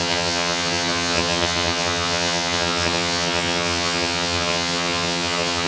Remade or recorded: remade